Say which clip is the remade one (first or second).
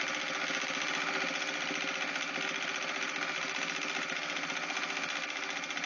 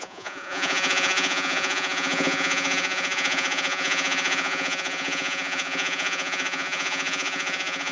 second